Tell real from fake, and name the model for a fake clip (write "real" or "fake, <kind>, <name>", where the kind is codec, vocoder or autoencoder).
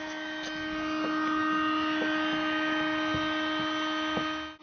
real